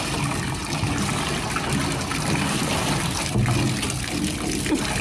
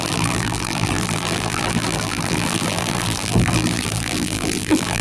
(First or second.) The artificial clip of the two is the second